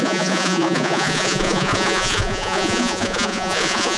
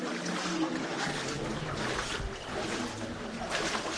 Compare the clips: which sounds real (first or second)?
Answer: second